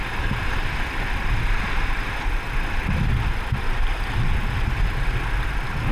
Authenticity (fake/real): real